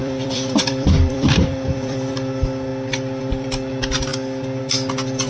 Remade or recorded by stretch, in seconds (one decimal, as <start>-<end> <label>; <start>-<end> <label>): 0.0-2.1 remade; 2.1-5.3 recorded